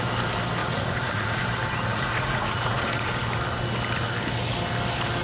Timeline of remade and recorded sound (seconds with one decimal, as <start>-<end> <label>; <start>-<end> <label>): 0.0-0.6 recorded; 0.6-1.4 remade; 1.4-1.9 recorded; 1.9-3.1 remade; 3.1-5.2 recorded